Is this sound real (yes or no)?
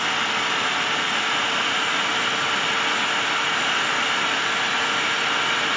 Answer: yes